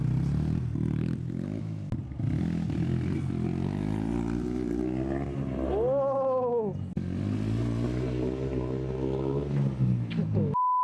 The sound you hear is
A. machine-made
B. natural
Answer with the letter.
B